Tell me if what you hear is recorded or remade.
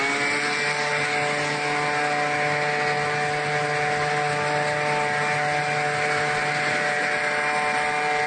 recorded